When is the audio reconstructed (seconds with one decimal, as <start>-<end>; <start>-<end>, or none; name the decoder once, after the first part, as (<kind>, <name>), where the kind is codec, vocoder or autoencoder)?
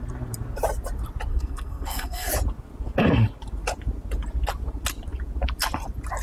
1.3-2.3 (codec, SNAC)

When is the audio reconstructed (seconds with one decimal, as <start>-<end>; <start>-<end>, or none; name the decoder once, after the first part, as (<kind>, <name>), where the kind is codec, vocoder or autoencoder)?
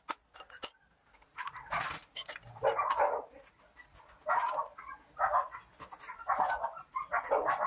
none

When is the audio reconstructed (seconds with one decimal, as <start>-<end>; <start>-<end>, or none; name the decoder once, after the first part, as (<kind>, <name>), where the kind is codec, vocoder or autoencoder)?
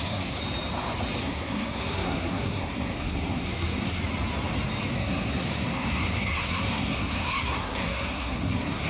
0.0-0.4 (codec, SNAC); 1.2-4.0; 4.9-8.9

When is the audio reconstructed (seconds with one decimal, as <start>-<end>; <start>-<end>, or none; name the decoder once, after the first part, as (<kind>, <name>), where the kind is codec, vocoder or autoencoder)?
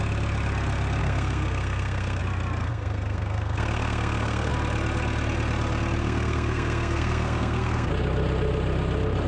1.0-2.2 (codec, SNAC); 2.6-4.5; 6.0-7.9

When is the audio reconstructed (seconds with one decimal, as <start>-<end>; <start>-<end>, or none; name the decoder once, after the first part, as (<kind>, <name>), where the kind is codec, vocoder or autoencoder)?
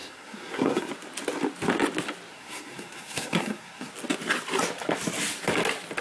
0.0-0.9 (codec, SNAC); 2.3-3.9